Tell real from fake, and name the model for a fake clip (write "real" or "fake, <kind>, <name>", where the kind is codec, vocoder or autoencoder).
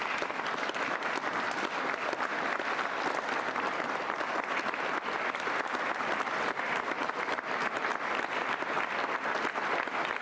real